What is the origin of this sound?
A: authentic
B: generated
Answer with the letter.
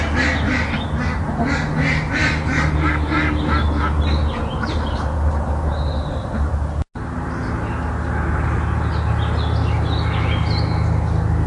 A